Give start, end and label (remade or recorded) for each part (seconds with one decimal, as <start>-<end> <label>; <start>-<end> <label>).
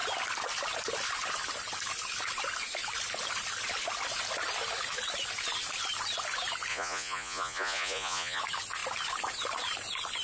0.0-6.7 recorded; 6.7-8.4 remade; 8.4-10.2 recorded